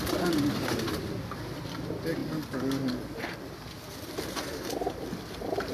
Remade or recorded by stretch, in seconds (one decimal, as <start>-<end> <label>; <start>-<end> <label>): 0.0-5.7 recorded